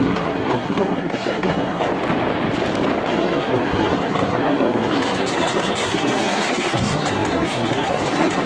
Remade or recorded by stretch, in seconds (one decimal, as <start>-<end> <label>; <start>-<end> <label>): 0.0-1.9 remade; 1.9-3.1 recorded; 3.1-8.5 remade